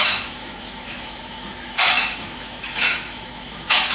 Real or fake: fake